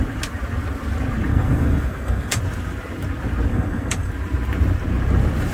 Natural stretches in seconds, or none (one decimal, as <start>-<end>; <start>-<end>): 0.0-1.3; 2.4-3.5; 4.1-5.5